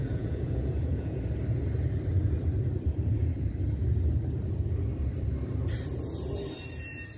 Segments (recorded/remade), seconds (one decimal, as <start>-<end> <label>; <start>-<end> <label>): 0.0-1.2 remade; 1.2-7.2 recorded